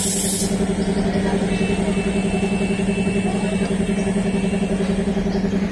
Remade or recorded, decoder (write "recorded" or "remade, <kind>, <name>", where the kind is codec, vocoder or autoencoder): recorded